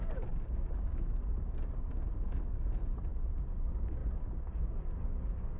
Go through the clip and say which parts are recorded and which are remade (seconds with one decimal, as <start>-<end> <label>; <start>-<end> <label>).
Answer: 0.0-2.8 remade; 2.8-3.3 recorded; 3.3-5.6 remade